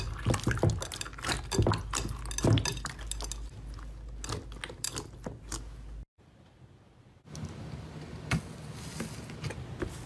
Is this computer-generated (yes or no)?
no